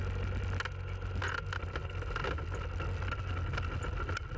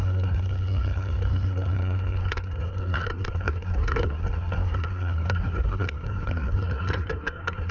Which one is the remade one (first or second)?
second